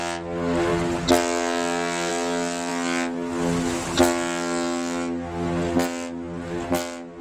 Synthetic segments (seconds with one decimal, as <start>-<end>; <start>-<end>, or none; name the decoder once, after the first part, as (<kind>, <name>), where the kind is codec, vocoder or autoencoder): none

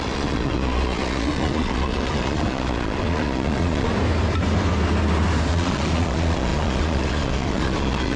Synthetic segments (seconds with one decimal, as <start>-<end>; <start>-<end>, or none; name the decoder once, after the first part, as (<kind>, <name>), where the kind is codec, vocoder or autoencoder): 0.0-3.9 (vocoder, Vocos); 5.5-8.2

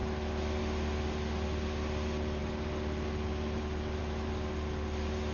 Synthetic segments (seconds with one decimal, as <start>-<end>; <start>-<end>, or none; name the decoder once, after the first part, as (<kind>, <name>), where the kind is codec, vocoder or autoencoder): none

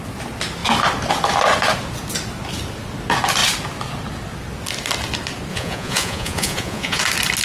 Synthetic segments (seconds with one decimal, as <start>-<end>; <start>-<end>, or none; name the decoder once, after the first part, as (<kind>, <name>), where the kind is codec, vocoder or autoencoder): 5.5-7.0 (vocoder, Vocos)

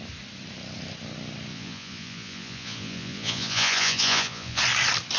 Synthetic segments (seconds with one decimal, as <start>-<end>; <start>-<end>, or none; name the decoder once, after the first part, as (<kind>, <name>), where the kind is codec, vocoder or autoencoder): 1.5-4.6 (vocoder, Vocos)

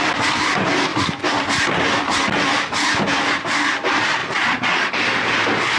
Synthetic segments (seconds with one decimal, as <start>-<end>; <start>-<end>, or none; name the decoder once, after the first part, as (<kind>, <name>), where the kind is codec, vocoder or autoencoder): 4.2-4.9 (vocoder, Vocos)